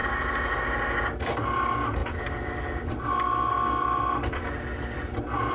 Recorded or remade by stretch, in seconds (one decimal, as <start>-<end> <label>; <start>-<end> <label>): 0.0-5.5 recorded